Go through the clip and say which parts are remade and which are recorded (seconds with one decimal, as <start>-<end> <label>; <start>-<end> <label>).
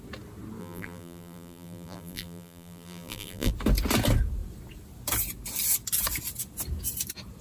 0.0-0.6 recorded; 0.6-3.5 remade; 3.5-7.4 recorded